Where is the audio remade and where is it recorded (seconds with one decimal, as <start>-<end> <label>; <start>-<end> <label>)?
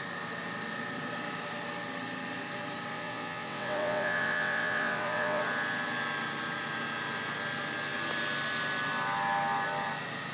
0.0-2.9 recorded; 2.9-5.4 remade; 5.4-10.3 recorded